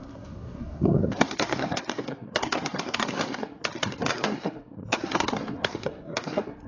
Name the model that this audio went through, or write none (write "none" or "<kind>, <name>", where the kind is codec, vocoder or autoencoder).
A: codec, SNAC